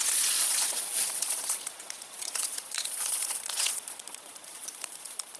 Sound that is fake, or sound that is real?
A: fake